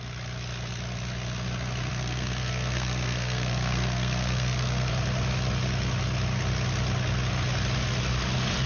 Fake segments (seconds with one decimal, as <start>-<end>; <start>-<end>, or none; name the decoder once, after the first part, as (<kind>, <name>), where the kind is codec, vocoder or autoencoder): 1.9-4.9 (codec, SNAC)